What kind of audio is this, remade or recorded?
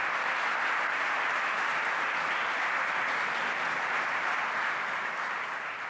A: recorded